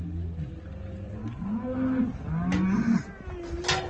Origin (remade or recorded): recorded